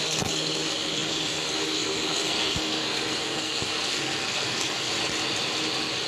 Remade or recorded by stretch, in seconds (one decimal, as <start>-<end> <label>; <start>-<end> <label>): 0.0-4.9 remade; 4.9-6.1 recorded